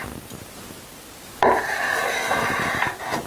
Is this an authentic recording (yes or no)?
yes